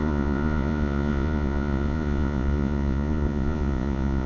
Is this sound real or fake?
fake